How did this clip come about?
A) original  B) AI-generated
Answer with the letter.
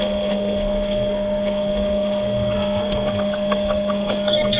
B